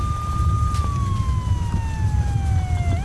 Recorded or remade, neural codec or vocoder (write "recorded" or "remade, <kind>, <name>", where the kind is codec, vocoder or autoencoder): recorded